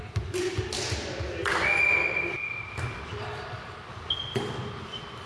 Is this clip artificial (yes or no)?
no